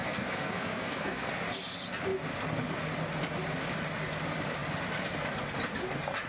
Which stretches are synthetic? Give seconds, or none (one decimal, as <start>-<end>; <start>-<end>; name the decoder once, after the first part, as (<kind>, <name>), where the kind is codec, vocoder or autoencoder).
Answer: 0.0-1.3 (codec, SNAC)